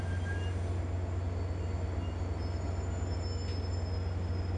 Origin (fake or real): real